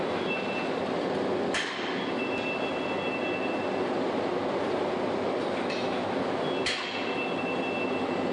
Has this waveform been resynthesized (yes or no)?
no